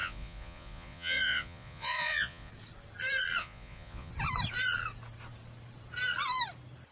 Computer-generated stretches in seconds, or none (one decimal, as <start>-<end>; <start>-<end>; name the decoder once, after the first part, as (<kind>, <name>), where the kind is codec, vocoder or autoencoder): 0.0-2.5 (vocoder, Vocos); 3.4-4.1